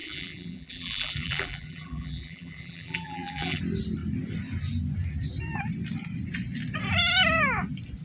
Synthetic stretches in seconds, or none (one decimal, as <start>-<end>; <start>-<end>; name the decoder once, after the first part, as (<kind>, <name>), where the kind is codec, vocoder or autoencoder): 0.0-3.6 (vocoder, BigVGAN v2)